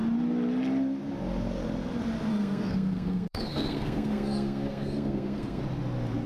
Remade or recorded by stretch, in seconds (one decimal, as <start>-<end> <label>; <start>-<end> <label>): 0.0-2.3 recorded; 2.3-5.6 remade; 5.6-6.3 recorded